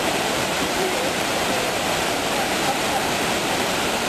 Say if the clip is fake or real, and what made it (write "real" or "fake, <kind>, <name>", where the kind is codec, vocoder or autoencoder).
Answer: fake, vocoder, BigVGAN v2